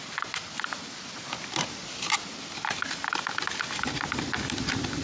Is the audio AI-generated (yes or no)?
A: no